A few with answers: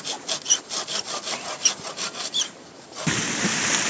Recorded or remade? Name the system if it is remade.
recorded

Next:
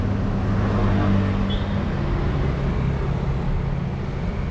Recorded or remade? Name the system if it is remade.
recorded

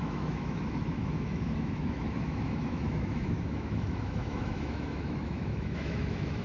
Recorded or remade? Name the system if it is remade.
remade, autoencoder, DAC-VAE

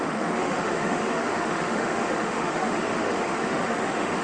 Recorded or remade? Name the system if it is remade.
remade, autoencoder, DAC-VAE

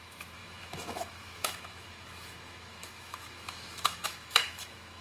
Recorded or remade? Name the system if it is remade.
remade, autoencoder, DAC-VAE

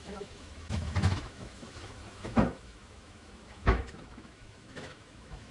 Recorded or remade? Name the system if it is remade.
remade, autoencoder, DAC-VAE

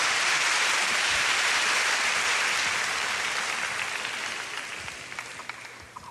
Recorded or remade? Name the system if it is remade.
recorded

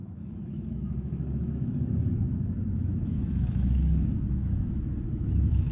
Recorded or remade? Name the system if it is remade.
remade, autoencoder, DAC-VAE